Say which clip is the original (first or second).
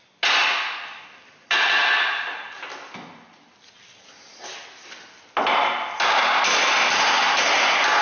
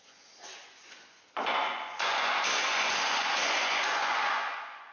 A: first